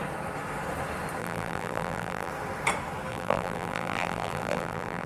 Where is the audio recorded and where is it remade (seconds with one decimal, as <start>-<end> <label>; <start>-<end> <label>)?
0.0-1.2 recorded; 1.2-2.3 remade; 2.3-3.1 recorded; 3.1-5.1 remade